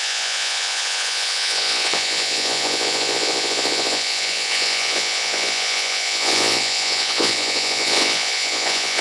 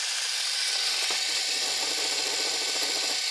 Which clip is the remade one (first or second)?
first